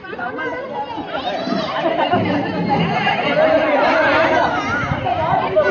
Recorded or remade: recorded